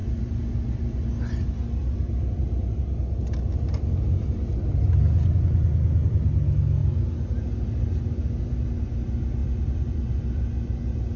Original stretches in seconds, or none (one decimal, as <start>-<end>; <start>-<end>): 0.0-11.2